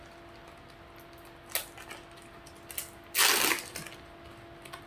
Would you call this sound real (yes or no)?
yes